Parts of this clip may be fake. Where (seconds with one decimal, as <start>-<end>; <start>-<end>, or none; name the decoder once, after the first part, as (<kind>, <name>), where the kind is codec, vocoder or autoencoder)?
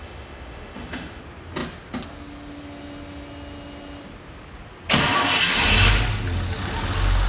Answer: 0.0-1.2 (autoencoder, DAC-VAE)